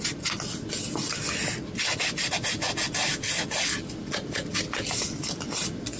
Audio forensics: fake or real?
real